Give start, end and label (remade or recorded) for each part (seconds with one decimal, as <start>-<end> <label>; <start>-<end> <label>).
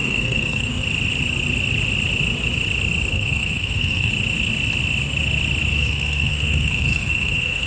0.0-0.7 remade; 0.7-3.1 recorded; 3.1-4.1 remade; 4.1-5.7 recorded; 5.7-7.7 remade